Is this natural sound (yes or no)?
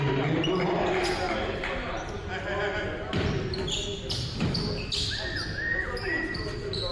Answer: yes